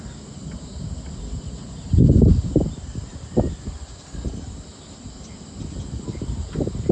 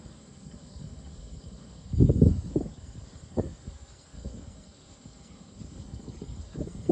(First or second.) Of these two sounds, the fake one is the second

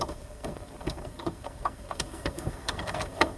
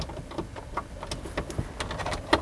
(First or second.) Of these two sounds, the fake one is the first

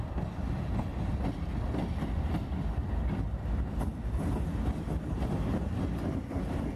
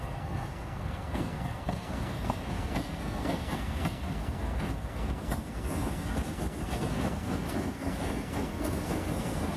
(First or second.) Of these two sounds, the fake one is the second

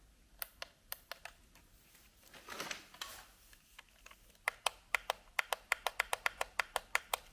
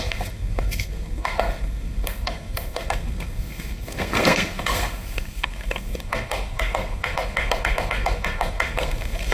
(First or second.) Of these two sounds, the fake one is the second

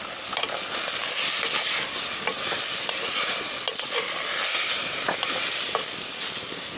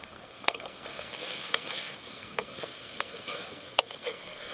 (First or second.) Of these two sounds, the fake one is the second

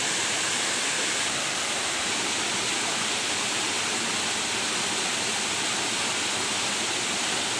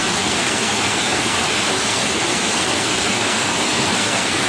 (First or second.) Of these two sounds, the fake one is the second